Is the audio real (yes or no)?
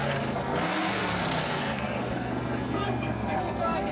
no